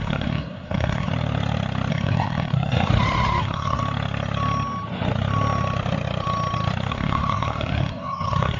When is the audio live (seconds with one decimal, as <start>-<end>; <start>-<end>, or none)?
1.1-1.9; 2.9-3.4; 3.8-6.9